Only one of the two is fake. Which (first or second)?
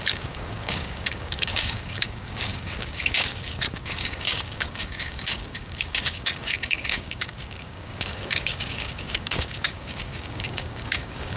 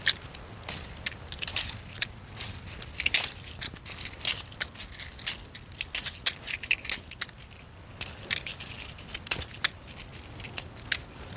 first